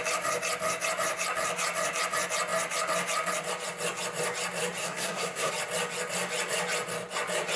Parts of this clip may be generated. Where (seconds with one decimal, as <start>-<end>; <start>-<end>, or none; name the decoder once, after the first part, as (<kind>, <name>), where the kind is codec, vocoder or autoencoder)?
4.8-5.5 (codec, SNAC)